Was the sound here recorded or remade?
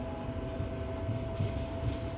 recorded